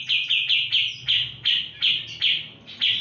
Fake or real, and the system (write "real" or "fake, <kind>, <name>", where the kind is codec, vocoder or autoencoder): real